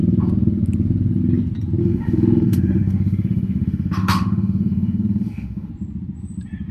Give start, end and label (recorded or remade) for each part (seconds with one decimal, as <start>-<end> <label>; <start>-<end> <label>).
0.0-1.8 recorded; 1.8-5.7 remade; 5.7-6.7 recorded

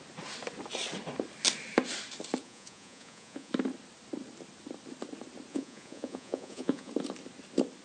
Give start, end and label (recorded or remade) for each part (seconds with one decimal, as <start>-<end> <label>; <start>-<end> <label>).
0.0-2.4 recorded; 2.4-3.5 remade; 3.5-5.5 recorded; 5.5-6.9 remade; 6.9-7.8 recorded

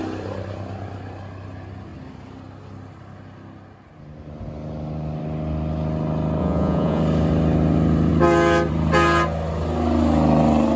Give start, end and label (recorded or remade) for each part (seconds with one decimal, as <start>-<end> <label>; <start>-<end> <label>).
0.0-6.4 recorded; 6.4-7.0 remade; 7.0-10.8 recorded

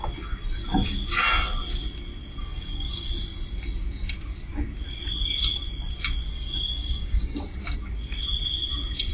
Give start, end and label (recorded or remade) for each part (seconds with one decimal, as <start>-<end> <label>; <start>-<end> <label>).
0.0-2.4 recorded; 2.4-3.1 remade; 3.1-6.3 recorded; 6.3-7.4 remade; 7.4-9.1 recorded

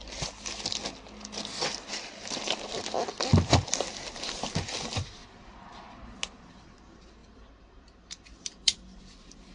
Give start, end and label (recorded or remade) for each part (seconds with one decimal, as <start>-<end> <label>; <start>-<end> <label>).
0.0-3.3 recorded; 3.3-4.2 remade; 4.2-7.2 recorded; 7.2-9.0 remade; 9.0-9.5 recorded

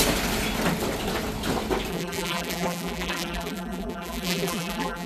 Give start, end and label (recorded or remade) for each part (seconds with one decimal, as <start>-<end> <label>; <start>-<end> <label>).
0.0-1.9 recorded; 1.9-5.1 remade

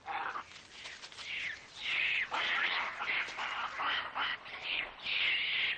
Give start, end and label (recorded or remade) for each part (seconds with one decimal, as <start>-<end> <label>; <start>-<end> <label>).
0.0-1.6 recorded; 1.6-3.0 remade; 3.0-4.3 recorded; 4.3-5.2 remade; 5.2-5.8 recorded